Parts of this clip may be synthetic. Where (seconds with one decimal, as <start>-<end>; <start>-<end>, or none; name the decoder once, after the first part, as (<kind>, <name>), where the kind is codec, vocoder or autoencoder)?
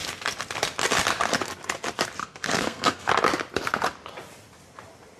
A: 2.2-3.1 (codec, SNAC)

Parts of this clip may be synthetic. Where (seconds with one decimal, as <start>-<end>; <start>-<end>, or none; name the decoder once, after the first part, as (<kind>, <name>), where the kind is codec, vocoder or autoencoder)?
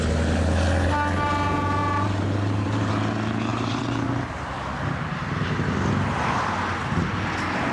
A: 1.8-2.9 (vocoder, BigVGAN v2); 3.5-5.9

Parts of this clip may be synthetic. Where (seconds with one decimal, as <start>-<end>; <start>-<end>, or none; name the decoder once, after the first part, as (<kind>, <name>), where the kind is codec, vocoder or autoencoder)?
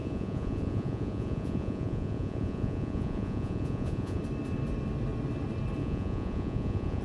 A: 0.0-4.2 (vocoder, Vocos); 5.8-7.0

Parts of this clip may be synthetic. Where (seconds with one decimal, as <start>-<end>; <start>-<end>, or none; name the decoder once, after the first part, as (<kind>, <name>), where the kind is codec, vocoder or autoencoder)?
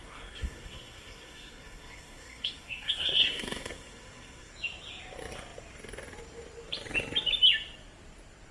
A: 0.0-4.5 (codec, SNAC)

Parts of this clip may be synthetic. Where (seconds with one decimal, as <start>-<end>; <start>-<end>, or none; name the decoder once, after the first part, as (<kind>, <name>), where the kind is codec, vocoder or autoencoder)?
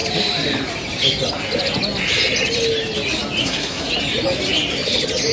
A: 3.4-3.9 (codec, SNAC)